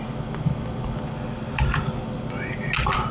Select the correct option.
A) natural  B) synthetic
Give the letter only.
A